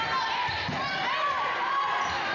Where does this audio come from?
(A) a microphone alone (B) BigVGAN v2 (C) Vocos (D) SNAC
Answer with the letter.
A